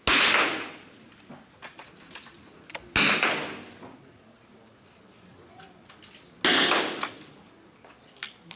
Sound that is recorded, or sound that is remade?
recorded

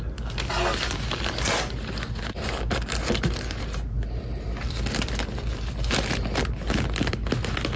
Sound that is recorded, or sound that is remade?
recorded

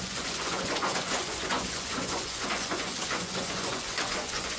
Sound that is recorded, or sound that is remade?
remade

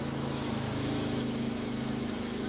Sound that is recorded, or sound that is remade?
remade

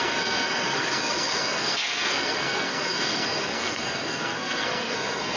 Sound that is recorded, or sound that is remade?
remade